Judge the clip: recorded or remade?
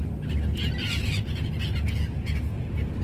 recorded